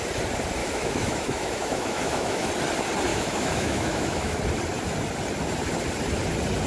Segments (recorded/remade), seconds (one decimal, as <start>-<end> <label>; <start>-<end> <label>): 0.0-0.6 recorded; 0.6-2.5 remade; 2.5-3.1 recorded; 3.1-4.4 remade; 4.4-6.7 recorded